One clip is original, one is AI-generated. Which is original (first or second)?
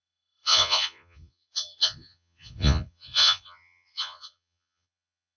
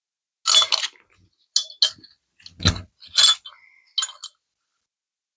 second